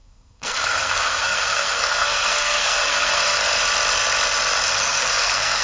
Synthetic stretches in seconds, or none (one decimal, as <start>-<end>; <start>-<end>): 0.0-3.4; 4.7-5.6

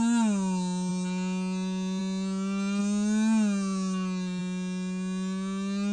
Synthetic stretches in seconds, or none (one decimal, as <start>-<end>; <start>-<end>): none

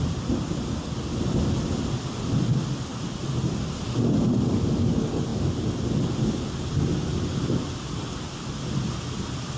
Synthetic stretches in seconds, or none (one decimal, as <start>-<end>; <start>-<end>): none

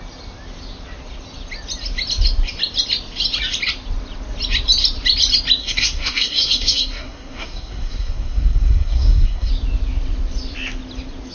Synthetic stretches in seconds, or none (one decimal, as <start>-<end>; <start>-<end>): 5.6-9.5